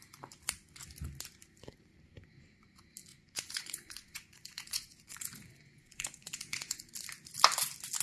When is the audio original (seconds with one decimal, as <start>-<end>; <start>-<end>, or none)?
0.0-3.1; 6.9-8.0